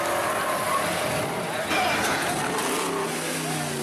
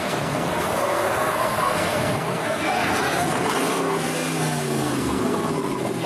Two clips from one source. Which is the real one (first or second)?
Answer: first